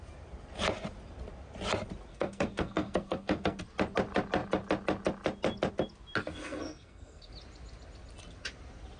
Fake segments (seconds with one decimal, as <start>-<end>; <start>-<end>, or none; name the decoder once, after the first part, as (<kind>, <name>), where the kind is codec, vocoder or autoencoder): 2.1-3.6 (codec, SNAC); 6.2-7.3

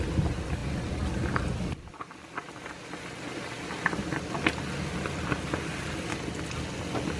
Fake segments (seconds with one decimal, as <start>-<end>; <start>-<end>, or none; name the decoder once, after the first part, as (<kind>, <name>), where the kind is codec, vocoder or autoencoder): none

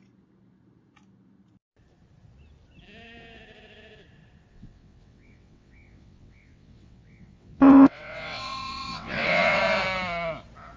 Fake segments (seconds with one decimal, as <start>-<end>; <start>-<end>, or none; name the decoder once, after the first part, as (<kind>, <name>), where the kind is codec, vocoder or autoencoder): 4.5-9.6 (vocoder, WaveNeXt)

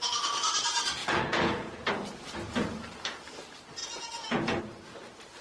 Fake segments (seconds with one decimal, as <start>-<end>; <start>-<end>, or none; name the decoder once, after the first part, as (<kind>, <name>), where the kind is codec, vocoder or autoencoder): 1.0-1.9 (vocoder, Vocos); 3.8-4.6

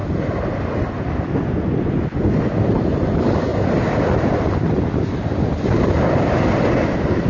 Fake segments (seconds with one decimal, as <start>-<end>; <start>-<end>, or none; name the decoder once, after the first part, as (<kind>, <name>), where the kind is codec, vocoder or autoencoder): none

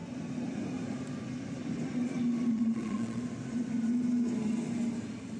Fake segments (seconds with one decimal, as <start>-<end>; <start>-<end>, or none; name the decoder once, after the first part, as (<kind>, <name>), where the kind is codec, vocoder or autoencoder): 2.5-3.2 (vocoder, Vocos)

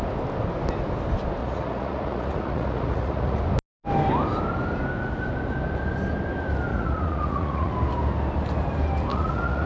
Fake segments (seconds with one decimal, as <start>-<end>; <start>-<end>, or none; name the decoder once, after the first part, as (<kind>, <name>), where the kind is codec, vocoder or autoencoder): 1.4-3.4 (vocoder, Vocos); 6.7-7.7; 9.1-9.7